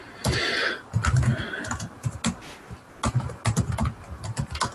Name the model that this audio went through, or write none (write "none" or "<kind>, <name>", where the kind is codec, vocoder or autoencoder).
none